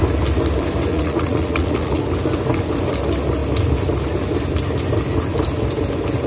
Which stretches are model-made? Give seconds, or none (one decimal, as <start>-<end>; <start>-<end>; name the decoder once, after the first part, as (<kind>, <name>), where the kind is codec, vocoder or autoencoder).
0.9-2.0 (vocoder, Vocos)